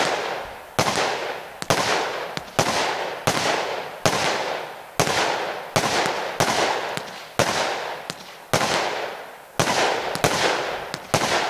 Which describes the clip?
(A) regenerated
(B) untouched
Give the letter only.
B